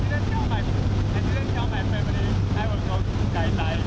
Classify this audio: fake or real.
real